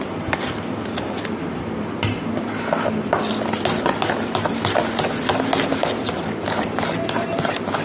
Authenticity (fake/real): real